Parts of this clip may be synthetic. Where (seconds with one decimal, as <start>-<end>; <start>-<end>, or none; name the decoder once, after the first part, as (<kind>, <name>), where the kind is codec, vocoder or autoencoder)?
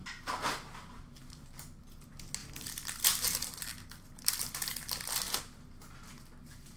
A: none